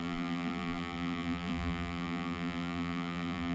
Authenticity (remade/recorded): remade